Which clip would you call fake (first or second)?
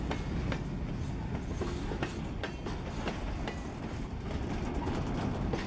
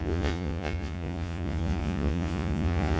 second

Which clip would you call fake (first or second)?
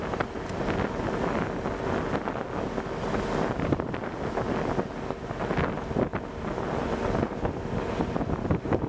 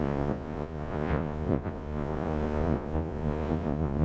second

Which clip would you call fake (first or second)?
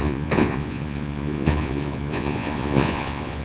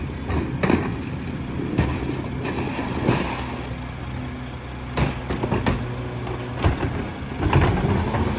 first